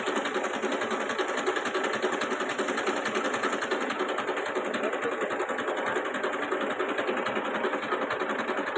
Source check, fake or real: real